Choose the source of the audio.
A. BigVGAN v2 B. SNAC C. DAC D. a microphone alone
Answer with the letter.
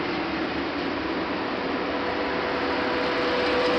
D